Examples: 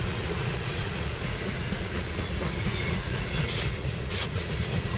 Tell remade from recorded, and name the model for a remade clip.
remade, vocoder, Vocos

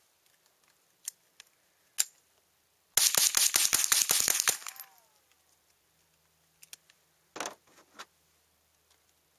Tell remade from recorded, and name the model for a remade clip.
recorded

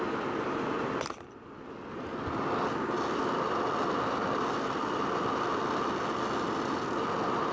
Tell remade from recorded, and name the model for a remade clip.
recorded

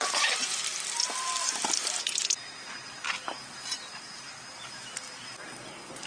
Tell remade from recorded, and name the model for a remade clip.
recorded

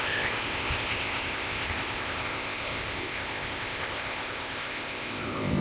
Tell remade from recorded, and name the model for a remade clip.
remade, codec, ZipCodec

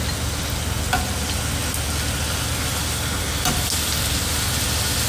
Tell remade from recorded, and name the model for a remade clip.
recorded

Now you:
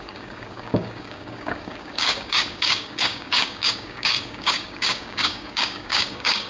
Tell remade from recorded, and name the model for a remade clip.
remade, codec, DAC